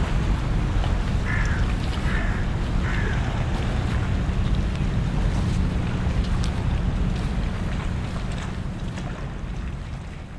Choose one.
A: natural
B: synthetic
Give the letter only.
A